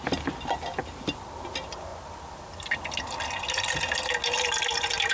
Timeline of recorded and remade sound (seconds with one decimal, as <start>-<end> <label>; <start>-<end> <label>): 0.0-5.1 recorded